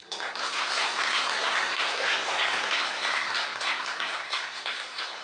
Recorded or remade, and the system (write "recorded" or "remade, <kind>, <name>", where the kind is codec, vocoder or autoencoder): remade, codec, SNAC